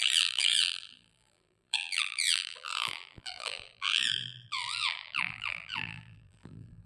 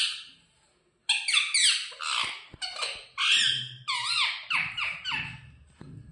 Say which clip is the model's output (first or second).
first